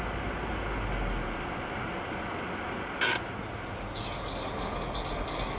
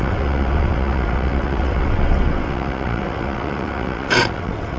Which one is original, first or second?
first